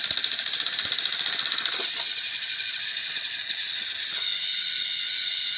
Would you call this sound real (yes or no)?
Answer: yes